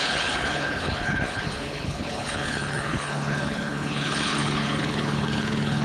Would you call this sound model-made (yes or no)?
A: yes